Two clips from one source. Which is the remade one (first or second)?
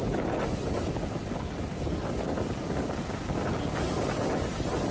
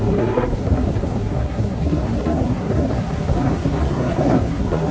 second